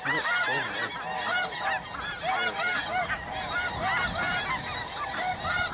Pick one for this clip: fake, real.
real